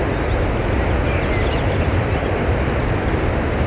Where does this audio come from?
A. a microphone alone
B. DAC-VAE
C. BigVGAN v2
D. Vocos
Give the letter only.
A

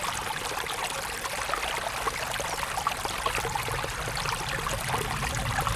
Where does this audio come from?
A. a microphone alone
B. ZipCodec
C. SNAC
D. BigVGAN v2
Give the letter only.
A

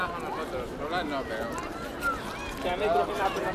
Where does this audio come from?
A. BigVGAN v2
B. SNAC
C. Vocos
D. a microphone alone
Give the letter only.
D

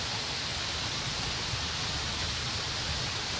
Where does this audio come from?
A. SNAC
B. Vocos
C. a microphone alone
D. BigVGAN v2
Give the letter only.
C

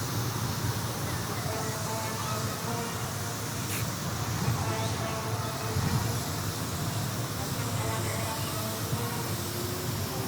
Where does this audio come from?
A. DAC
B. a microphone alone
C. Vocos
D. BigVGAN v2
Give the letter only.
B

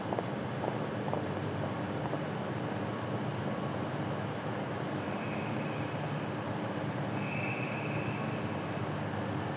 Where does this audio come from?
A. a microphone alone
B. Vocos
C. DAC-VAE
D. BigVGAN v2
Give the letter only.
A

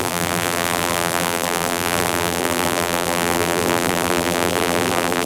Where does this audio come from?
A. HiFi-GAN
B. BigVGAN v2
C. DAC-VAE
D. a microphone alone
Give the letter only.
B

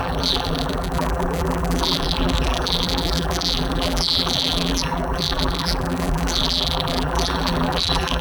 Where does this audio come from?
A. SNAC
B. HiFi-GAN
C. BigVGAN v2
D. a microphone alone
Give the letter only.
C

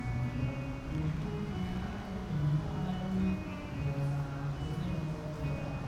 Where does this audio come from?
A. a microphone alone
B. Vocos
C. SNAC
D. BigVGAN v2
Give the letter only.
A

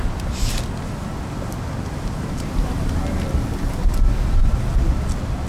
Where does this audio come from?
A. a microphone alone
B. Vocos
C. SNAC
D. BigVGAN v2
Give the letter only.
A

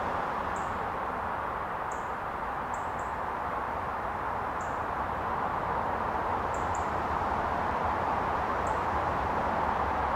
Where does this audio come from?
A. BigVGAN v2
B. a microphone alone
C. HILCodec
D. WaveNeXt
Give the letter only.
A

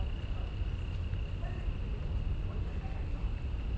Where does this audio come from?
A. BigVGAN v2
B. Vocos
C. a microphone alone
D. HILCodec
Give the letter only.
C